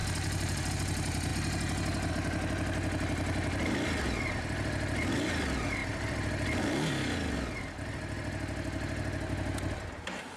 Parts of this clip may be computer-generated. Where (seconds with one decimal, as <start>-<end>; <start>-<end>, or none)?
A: 0.0-0.7